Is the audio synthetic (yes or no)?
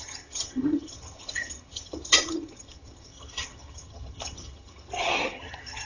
yes